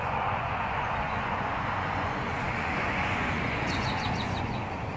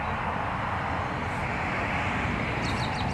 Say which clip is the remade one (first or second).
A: first